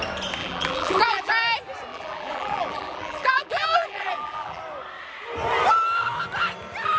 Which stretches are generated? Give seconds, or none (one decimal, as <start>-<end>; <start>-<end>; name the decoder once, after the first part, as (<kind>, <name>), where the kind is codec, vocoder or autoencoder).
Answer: 0.4-1.3 (vocoder, BigVGAN v2); 1.9-4.6